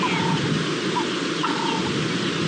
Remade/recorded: recorded